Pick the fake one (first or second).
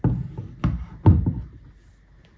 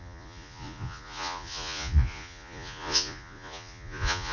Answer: second